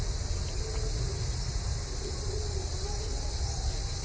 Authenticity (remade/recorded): recorded